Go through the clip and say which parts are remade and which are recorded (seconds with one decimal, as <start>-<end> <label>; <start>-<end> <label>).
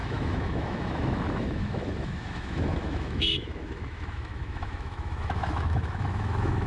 0.0-6.7 remade